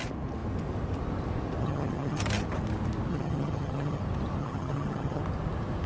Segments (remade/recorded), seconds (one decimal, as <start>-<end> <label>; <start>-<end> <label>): 0.0-1.6 recorded; 1.6-2.2 remade; 2.2-3.1 recorded; 3.1-4.0 remade; 4.0-4.4 recorded; 4.4-5.2 remade; 5.2-5.9 recorded